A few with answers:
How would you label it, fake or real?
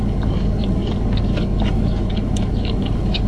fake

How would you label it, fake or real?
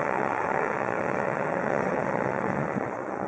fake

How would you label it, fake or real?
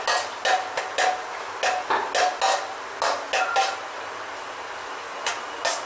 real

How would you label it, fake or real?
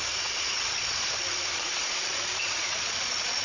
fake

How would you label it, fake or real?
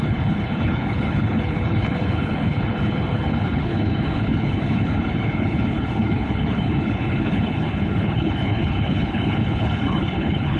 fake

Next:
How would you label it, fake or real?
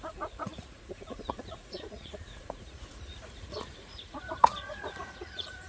fake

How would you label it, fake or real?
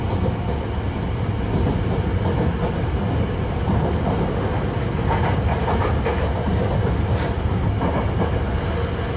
real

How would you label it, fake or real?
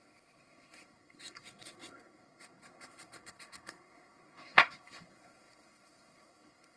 fake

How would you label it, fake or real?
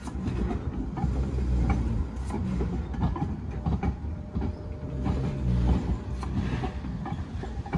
real